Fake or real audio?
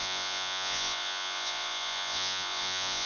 fake